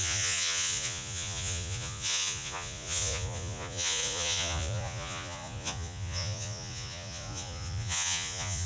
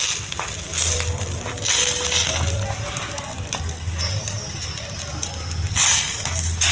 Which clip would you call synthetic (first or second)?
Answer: first